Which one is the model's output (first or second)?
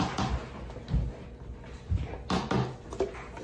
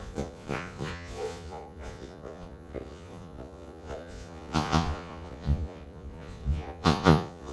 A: second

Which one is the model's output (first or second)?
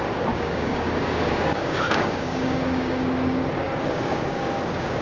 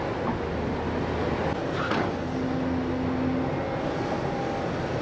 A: first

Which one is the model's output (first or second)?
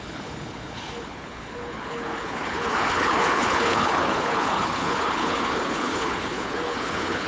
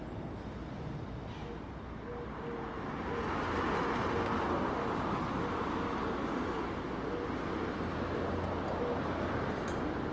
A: first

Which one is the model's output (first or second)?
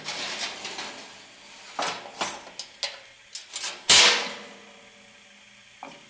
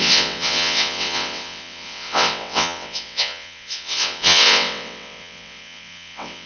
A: second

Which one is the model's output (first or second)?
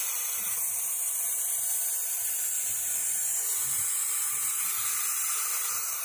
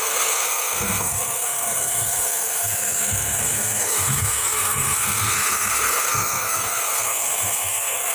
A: second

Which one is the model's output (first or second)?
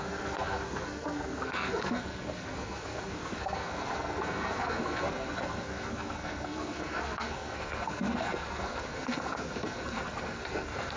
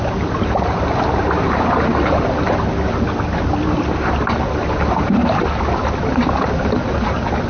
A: first